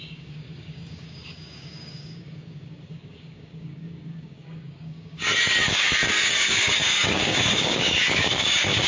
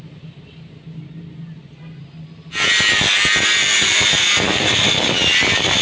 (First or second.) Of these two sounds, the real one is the second